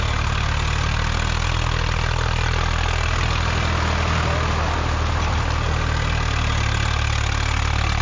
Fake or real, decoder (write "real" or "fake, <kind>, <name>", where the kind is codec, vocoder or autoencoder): real